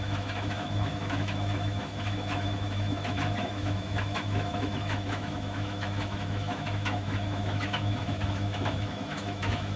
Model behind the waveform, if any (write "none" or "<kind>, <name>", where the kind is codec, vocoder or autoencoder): autoencoder, DAC-VAE